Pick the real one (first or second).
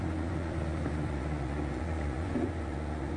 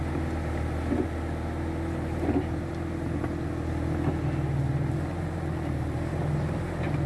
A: second